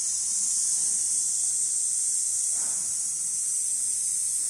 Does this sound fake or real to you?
real